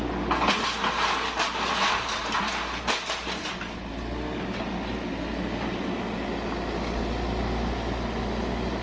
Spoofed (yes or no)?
no